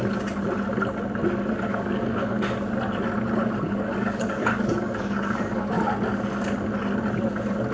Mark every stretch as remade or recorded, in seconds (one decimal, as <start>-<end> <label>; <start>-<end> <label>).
0.0-1.7 recorded; 1.7-2.4 remade; 2.4-3.4 recorded; 3.4-5.7 remade; 5.7-7.7 recorded